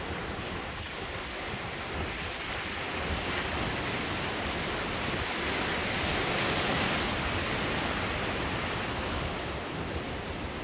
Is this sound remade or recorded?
recorded